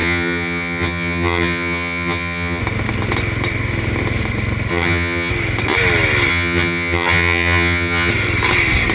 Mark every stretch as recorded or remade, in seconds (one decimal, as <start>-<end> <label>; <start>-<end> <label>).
0.0-2.6 remade; 2.6-4.7 recorded; 4.7-5.3 remade; 5.3-6.3 recorded; 6.3-8.1 remade; 8.1-8.9 recorded